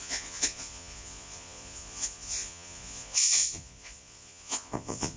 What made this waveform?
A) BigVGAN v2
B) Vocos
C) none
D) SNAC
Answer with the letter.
B